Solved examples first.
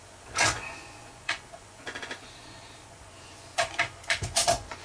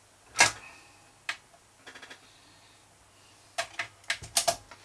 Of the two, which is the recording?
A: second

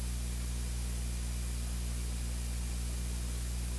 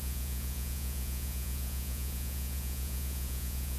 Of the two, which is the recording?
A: first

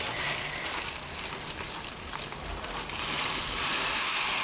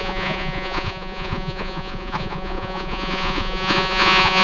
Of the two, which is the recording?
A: first